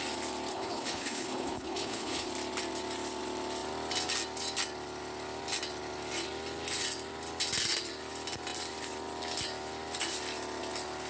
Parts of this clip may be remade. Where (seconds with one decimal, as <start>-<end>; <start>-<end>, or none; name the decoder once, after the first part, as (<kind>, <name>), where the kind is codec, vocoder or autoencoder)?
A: 0.5-2.3 (codec, HILCodec)